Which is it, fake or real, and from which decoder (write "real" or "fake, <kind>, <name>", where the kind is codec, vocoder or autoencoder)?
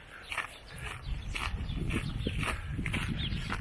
real